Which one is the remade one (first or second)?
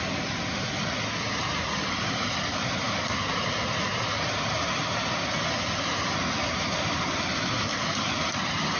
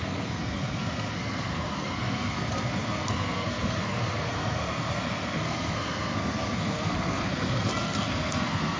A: second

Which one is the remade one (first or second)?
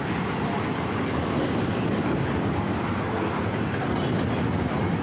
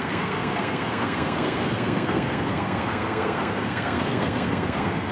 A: second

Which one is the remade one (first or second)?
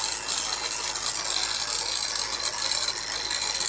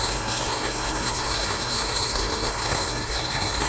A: second